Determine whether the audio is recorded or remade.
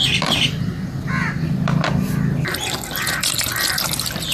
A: recorded